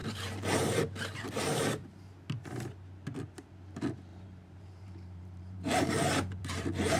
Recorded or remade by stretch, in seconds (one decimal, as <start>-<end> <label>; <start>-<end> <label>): 0.0-1.3 remade; 1.3-4.1 recorded; 4.1-7.0 remade